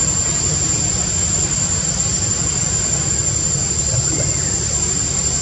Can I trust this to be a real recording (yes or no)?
yes